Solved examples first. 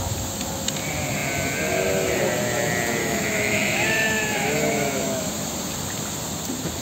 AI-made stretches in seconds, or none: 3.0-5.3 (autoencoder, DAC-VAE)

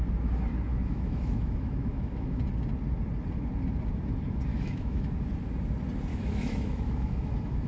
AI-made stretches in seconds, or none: 0.7-2.4 (autoencoder, DAC-VAE); 4.5-5.1; 6.1-7.7